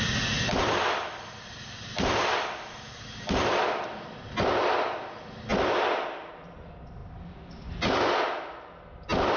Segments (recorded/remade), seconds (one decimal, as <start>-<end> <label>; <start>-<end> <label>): 0.0-9.4 recorded